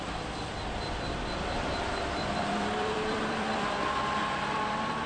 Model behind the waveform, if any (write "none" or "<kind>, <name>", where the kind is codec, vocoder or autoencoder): vocoder, BigVGAN v2